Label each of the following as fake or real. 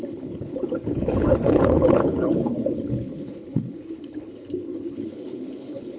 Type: fake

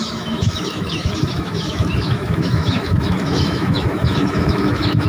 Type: fake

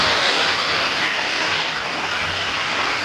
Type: fake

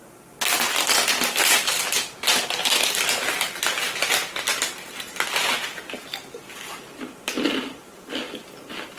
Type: real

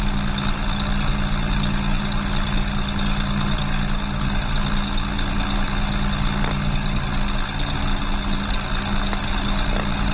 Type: real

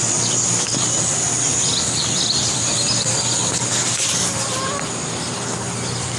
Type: real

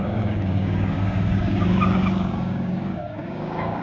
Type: fake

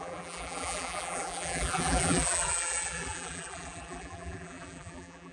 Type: fake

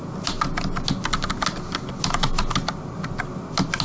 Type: real